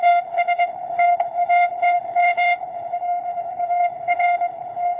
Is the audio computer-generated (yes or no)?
yes